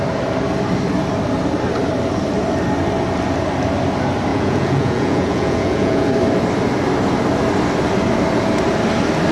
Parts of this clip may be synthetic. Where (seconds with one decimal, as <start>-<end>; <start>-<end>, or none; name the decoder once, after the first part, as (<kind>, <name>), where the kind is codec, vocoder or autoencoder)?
4.3-6.1 (vocoder, Vocos)